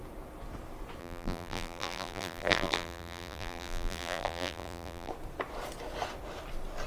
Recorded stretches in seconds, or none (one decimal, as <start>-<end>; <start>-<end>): 0.0-1.0; 5.1-6.9